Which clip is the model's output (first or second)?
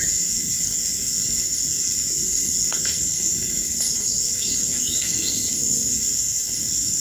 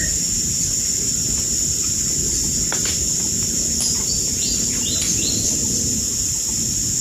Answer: first